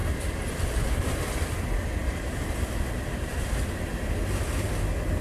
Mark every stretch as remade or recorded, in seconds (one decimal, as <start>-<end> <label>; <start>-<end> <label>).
0.0-0.8 remade; 0.8-5.2 recorded